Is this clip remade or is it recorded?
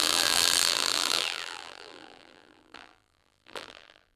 remade